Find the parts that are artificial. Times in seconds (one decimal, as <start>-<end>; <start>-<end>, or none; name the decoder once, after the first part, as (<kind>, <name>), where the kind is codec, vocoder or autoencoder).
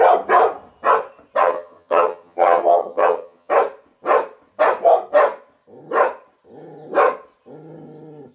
1.4-3.5 (vocoder, HiFi-GAN)